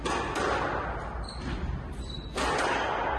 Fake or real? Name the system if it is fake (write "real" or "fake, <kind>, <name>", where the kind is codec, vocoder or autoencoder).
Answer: real